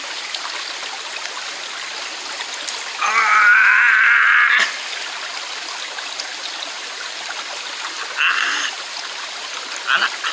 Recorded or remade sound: recorded